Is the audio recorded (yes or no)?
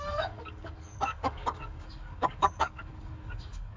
no